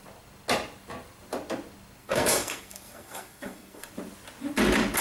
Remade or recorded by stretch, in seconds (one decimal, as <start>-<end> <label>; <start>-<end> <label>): 0.0-2.0 recorded; 2.0-3.9 remade; 3.9-5.0 recorded